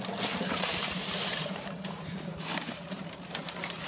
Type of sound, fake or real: fake